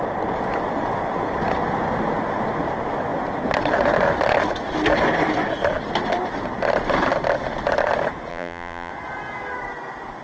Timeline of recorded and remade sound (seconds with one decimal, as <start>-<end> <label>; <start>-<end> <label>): 0.0-8.3 recorded; 8.3-8.9 remade; 8.9-10.2 recorded